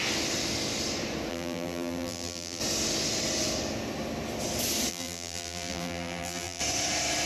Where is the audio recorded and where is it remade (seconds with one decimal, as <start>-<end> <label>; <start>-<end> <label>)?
0.0-1.3 recorded; 1.3-2.6 remade; 2.6-4.9 recorded; 4.9-6.6 remade; 6.6-7.3 recorded